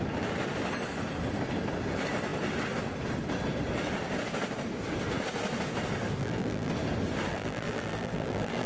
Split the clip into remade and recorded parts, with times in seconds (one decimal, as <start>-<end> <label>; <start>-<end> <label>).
0.0-6.2 recorded; 6.2-6.7 remade; 6.7-7.3 recorded; 7.3-8.7 remade